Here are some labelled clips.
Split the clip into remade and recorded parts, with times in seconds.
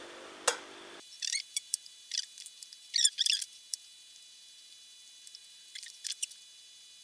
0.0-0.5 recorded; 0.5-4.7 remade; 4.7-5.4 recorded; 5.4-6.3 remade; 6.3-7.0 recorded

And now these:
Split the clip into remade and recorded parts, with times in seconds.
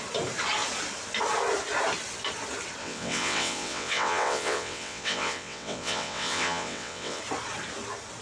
0.0-2.8 recorded; 2.8-7.2 remade; 7.2-8.2 recorded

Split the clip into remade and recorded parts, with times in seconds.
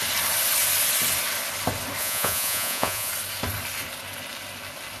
0.0-2.0 recorded; 2.0-3.1 remade; 3.1-5.0 recorded